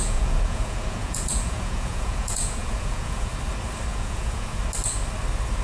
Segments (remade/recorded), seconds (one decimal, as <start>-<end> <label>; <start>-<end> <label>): 0.0-3.4 remade; 3.4-3.9 recorded; 3.9-4.6 remade; 4.6-5.6 recorded